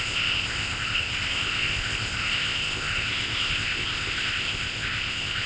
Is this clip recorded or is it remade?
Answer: remade